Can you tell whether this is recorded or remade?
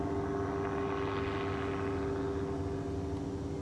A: recorded